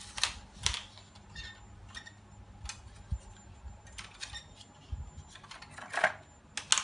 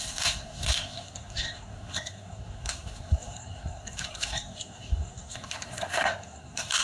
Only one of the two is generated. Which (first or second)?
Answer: second